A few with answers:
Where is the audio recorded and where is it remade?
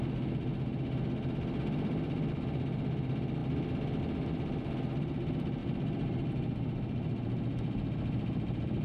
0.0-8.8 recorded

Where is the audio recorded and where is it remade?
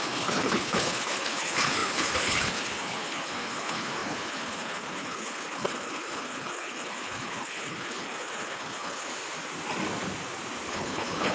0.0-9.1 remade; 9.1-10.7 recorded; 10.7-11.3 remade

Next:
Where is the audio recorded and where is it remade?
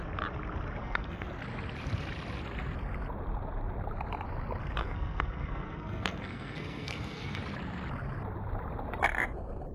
0.0-0.8 recorded; 0.8-1.3 remade; 1.3-4.8 recorded; 4.8-7.4 remade; 7.4-9.7 recorded